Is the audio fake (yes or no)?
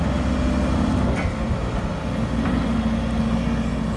no